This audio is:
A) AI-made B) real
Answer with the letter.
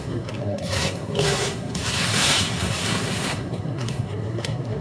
A